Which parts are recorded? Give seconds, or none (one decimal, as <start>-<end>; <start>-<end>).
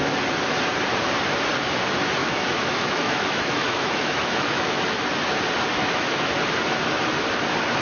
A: 0.0-2.2; 4.8-5.8; 6.4-7.8